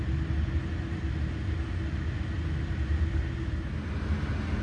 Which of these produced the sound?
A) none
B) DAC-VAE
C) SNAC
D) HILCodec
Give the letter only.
A